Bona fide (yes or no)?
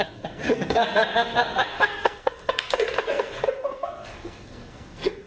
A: no